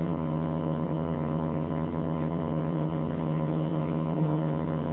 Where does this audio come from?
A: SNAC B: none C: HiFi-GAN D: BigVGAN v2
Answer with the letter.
C